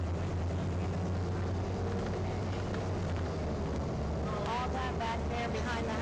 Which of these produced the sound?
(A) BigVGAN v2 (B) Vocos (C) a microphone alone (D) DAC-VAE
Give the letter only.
C